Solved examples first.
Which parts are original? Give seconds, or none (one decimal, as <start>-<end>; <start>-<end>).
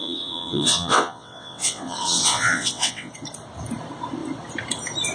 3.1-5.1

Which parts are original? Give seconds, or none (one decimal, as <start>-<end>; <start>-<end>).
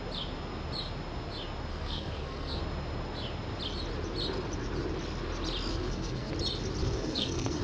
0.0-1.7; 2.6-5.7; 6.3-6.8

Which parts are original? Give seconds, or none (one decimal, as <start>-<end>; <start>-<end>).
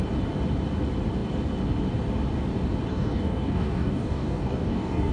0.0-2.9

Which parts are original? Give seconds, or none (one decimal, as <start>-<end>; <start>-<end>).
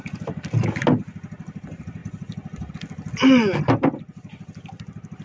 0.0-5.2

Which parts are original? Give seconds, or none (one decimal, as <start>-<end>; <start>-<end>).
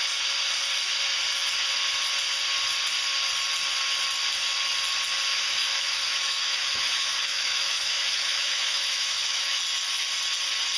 0.0-5.3; 9.6-10.8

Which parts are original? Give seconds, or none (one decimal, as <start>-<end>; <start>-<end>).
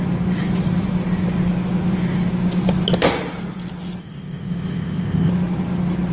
0.0-4.0; 5.3-6.1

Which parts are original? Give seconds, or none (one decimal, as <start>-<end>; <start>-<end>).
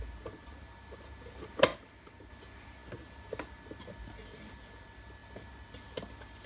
0.0-6.5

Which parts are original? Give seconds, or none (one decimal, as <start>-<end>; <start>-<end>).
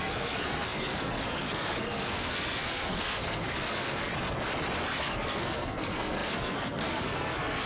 4.1-5.0